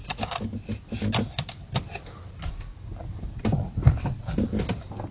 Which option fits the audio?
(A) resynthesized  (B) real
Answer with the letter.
B